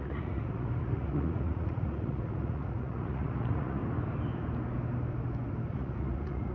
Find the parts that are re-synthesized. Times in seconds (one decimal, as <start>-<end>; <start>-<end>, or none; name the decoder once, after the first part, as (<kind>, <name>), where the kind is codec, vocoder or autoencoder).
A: 0.0-3.8 (vocoder, Vocos); 5.7-6.5